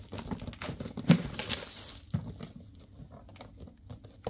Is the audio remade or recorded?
recorded